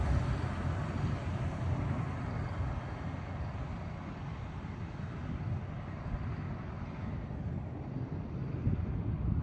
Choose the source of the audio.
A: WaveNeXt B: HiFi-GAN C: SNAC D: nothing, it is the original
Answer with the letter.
D